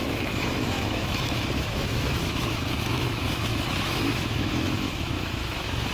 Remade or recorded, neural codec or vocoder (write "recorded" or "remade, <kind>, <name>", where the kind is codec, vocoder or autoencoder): remade, autoencoder, DAC-VAE